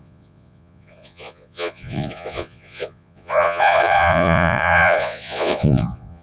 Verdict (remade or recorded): remade